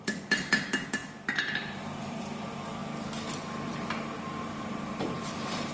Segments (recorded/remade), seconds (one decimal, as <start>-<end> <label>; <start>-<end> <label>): 0.0-1.0 remade; 1.0-1.8 recorded; 1.8-2.8 remade; 2.8-4.4 recorded; 4.4-5.7 remade